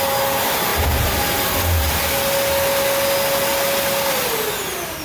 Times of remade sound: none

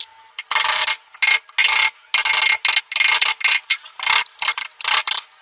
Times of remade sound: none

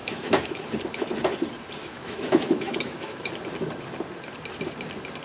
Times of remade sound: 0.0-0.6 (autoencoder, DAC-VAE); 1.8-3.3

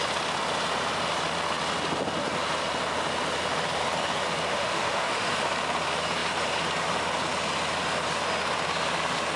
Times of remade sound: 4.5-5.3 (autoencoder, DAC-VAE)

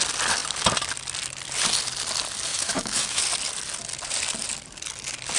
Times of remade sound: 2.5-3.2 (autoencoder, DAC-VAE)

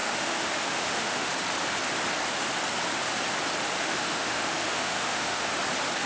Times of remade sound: 0.0-1.3 (autoencoder, DAC-VAE); 3.8-5.5

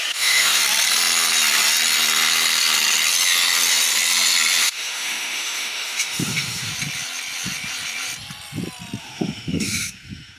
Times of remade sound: 0.0-0.6 (autoencoder, DAC-VAE); 4.6-6.7; 9.0-10.4